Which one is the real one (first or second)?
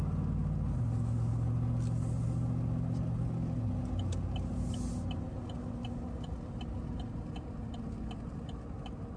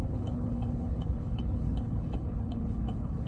first